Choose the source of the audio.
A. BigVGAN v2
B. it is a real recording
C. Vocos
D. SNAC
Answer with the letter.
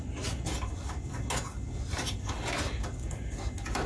B